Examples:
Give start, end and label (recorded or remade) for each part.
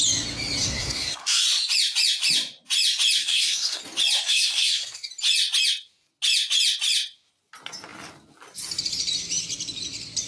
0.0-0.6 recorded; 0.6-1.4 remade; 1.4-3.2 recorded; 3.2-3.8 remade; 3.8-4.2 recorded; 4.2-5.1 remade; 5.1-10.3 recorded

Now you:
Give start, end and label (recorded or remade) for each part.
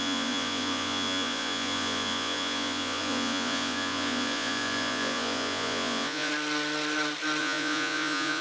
0.0-6.3 remade; 6.3-7.4 recorded; 7.4-8.4 remade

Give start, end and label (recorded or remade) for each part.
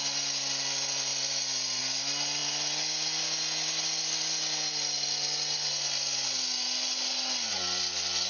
0.0-8.3 recorded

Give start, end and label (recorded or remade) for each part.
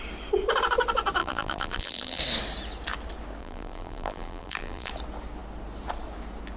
0.0-1.2 recorded; 1.2-2.2 remade; 2.2-3.4 recorded; 3.4-4.9 remade; 4.9-6.6 recorded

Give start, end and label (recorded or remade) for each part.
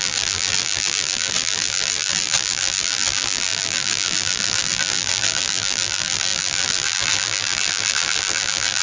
0.0-8.8 remade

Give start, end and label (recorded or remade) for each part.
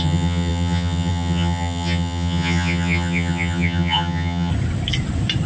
0.0-4.5 remade; 4.5-5.5 recorded